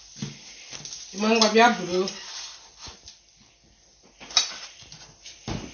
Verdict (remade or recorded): recorded